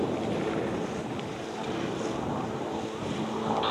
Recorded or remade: recorded